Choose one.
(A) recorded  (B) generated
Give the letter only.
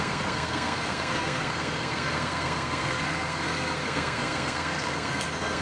B